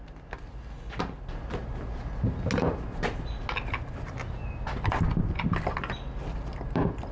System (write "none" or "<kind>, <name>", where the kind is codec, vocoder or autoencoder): none